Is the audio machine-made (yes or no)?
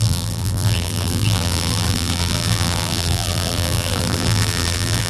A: yes